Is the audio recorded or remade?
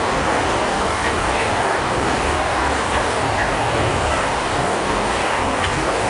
remade